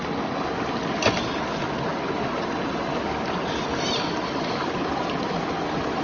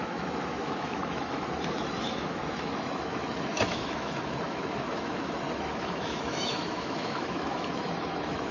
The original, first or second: first